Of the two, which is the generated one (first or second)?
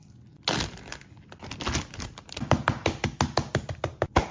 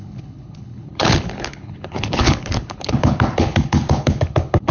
second